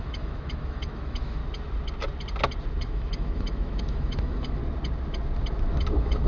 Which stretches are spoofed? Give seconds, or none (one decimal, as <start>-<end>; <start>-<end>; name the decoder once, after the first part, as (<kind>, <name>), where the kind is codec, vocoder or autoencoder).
0.0-1.4 (autoencoder, DAC-VAE); 2.8-4.6; 5.7-6.3